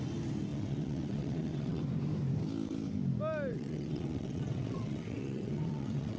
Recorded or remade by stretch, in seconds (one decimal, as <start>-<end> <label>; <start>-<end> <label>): 0.0-0.5 recorded; 0.5-1.8 remade; 1.8-3.5 recorded; 3.5-6.2 remade